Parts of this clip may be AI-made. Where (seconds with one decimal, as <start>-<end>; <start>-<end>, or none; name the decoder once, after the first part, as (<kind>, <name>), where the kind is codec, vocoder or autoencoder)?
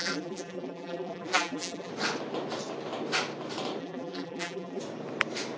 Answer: 0.0-1.9 (vocoder, BigVGAN v2); 3.8-4.8